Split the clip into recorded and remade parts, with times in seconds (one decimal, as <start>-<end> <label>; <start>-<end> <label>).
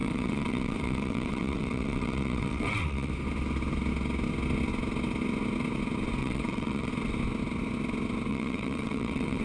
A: 0.0-3.1 remade; 3.1-6.2 recorded; 6.2-6.9 remade; 6.9-8.3 recorded; 8.3-9.4 remade